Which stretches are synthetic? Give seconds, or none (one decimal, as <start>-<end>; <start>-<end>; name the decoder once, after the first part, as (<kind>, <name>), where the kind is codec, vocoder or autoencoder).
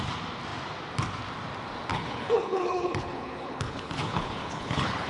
1.9-5.1 (codec, HILCodec)